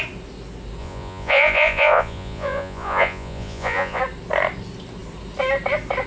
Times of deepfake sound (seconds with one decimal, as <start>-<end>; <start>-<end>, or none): 0.8-4.0